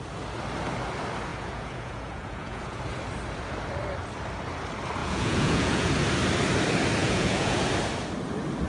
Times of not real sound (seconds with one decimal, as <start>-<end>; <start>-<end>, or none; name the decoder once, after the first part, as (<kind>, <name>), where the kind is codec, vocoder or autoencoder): 1.3-2.8 (vocoder, Vocos); 5.0-5.9; 7.0-7.6